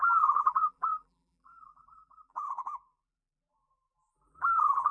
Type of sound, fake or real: fake